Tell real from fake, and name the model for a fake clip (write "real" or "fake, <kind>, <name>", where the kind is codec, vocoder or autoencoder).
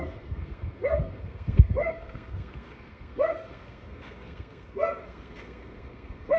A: fake, codec, SNAC